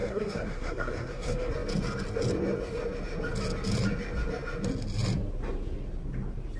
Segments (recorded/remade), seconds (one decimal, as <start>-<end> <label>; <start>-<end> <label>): 0.0-1.5 remade; 1.5-6.6 recorded